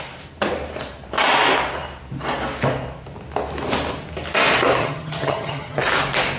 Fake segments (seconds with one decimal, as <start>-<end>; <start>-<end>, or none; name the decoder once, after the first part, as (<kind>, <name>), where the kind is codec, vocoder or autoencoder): 4.8-5.8 (vocoder, HiFi-GAN)